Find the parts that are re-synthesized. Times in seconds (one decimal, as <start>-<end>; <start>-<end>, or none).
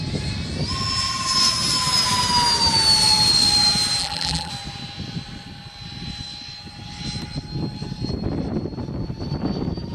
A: 4.0-4.5